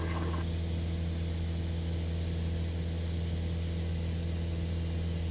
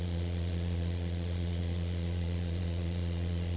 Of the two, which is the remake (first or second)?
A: second